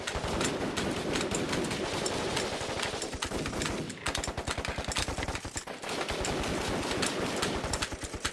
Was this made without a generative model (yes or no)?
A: yes